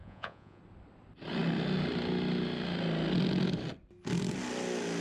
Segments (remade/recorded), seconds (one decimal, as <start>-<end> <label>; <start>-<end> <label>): 0.0-0.6 remade; 0.6-5.0 recorded

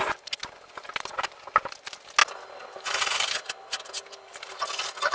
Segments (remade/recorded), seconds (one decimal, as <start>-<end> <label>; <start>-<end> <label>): 0.0-5.1 recorded

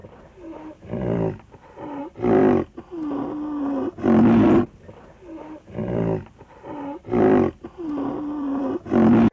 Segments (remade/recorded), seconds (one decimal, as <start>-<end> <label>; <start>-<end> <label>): 0.0-2.0 remade; 2.0-5.8 recorded; 5.8-8.6 remade; 8.6-9.3 recorded

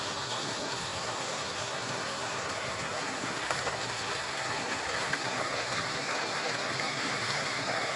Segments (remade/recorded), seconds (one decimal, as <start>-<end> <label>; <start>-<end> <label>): 0.0-8.0 remade